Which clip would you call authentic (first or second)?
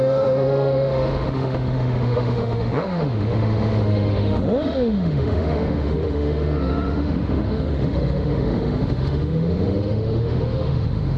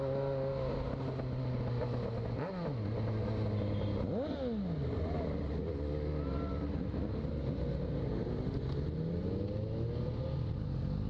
second